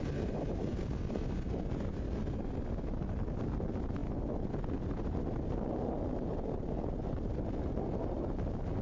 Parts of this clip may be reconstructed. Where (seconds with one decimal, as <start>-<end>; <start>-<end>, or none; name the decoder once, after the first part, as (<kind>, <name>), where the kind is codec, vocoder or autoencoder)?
none